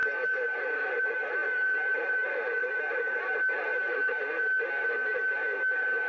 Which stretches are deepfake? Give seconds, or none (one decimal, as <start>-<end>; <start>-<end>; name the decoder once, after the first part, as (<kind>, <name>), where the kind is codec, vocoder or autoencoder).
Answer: 0.0-2.0 (vocoder, BigVGAN v2); 2.6-3.2; 3.7-4.2